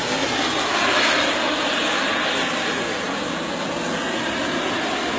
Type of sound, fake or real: real